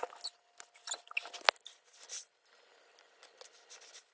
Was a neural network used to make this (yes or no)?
no